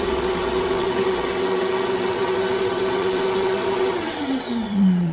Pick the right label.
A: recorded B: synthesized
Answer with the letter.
B